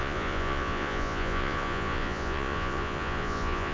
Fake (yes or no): yes